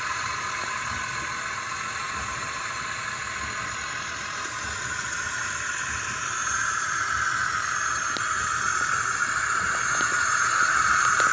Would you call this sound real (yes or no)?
yes